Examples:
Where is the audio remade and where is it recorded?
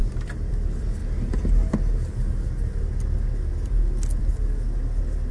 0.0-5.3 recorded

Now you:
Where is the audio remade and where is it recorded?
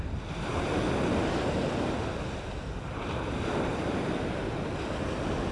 0.0-5.5 recorded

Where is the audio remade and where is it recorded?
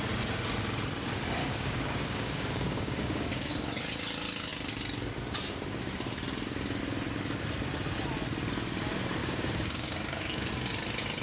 0.0-1.4 recorded; 1.4-3.5 remade; 3.5-9.2 recorded; 9.2-10.5 remade; 10.5-11.2 recorded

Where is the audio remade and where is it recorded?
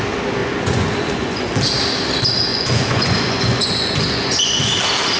0.0-0.4 recorded; 0.4-1.5 remade; 1.5-2.5 recorded; 2.5-4.6 remade; 4.6-5.2 recorded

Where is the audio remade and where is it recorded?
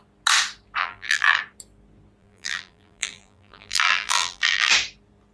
0.0-0.8 recorded; 0.8-1.4 remade; 1.4-2.2 recorded; 2.2-4.7 remade; 4.7-5.3 recorded